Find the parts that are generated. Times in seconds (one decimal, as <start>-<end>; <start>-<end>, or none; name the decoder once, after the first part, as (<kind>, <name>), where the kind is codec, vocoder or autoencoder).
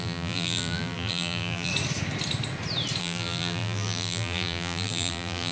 0.0-1.7 (vocoder, BigVGAN v2); 3.0-5.5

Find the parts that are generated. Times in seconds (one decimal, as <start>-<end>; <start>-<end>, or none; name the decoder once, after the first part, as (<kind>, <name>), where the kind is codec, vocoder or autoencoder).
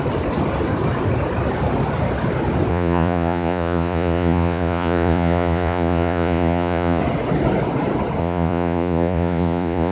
2.7-7.0 (vocoder, Vocos); 8.2-9.9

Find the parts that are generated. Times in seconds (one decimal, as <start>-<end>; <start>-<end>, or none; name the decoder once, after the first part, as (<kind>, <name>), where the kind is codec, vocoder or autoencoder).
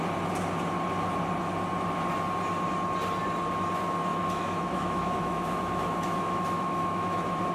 4.1-7.5 (autoencoder, DAC-VAE)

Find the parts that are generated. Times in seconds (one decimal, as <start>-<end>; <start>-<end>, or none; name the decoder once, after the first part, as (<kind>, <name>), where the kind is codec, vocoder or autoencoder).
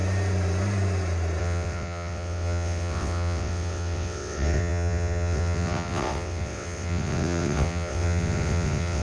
1.4-9.0 (vocoder, WaveNeXt)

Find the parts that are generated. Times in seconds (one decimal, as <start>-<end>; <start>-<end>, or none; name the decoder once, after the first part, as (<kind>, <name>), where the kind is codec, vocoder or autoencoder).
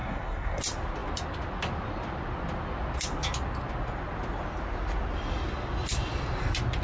0.0-0.6 (codec, SNAC)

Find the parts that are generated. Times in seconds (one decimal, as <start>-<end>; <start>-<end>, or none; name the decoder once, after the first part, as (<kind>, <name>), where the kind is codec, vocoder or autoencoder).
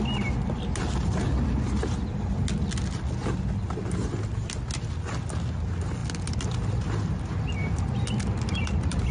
none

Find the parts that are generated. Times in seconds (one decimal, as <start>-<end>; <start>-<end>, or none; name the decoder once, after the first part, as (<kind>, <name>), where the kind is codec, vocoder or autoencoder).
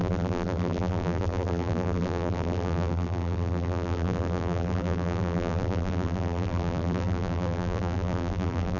0.0-8.8 (vocoder, BigVGAN v2)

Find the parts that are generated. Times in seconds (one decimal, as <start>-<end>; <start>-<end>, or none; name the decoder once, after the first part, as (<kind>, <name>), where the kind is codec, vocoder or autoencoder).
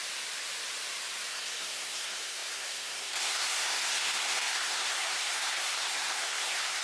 1.3-6.8 (codec, SNAC)